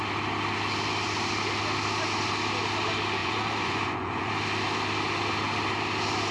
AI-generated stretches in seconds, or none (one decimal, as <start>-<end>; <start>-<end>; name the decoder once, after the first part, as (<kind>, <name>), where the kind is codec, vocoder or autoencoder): 3.2-4.3 (vocoder, Vocos)